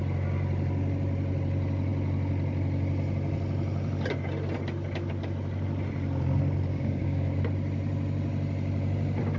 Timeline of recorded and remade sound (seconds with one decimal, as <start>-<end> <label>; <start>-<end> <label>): 0.0-6.7 recorded; 6.7-7.4 remade; 7.4-9.4 recorded